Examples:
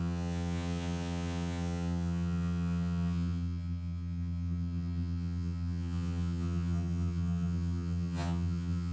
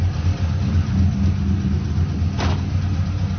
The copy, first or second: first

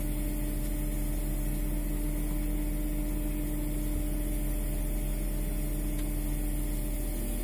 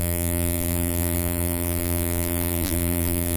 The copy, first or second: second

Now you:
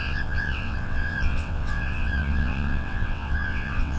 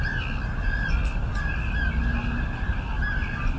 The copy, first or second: first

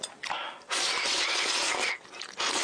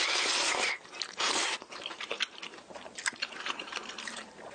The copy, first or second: second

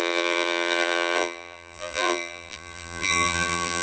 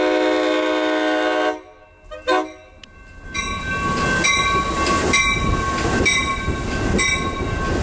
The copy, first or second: first